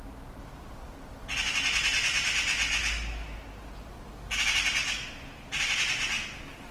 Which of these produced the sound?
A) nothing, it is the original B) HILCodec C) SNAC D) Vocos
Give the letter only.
A